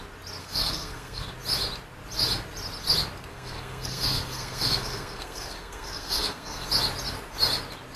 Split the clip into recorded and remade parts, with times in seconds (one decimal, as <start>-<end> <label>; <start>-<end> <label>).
0.0-0.4 recorded; 0.4-1.3 remade; 1.3-3.3 recorded; 3.3-6.7 remade; 6.7-8.0 recorded